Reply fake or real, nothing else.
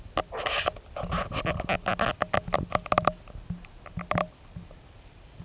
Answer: real